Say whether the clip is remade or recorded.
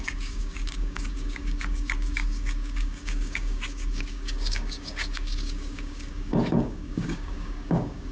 remade